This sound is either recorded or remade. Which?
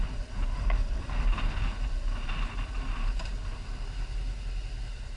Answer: recorded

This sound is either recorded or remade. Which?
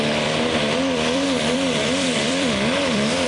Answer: remade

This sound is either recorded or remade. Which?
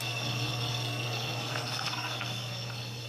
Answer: remade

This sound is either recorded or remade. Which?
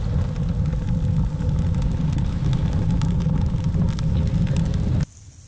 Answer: recorded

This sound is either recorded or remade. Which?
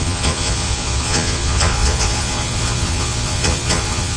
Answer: remade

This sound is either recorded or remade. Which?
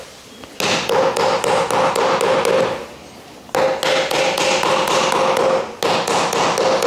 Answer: recorded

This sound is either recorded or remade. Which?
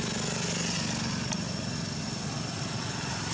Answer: recorded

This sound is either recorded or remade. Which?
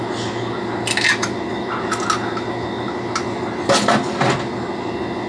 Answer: recorded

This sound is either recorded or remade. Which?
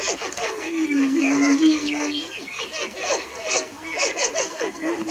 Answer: remade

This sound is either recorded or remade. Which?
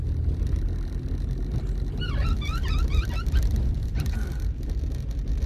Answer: recorded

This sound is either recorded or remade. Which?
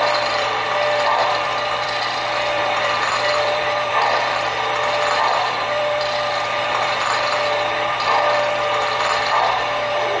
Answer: remade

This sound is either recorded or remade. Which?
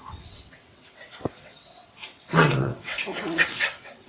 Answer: remade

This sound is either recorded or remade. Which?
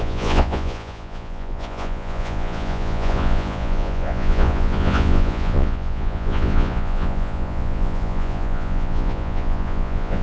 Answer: remade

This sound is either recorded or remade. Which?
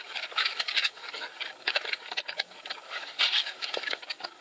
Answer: remade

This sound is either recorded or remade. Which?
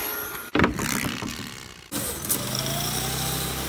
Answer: recorded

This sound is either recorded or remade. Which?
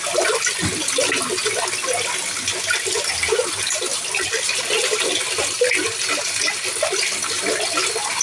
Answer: recorded